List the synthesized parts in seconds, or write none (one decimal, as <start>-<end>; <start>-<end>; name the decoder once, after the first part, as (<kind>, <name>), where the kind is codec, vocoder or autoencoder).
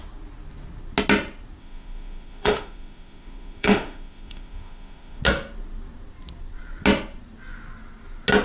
1.6-5.2 (autoencoder, DAC-VAE)